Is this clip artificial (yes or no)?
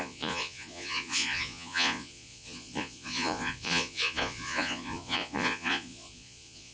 yes